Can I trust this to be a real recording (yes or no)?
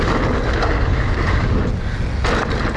yes